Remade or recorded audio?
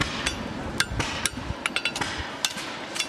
recorded